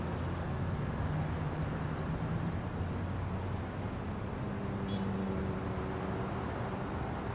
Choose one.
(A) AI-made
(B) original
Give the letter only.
B